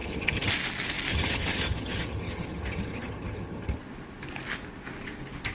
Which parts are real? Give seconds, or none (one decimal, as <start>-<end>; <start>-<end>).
0.5-1.1; 3.8-5.5